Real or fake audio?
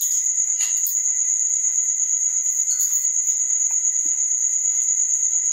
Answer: real